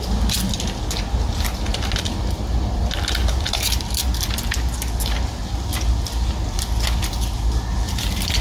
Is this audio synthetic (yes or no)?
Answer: no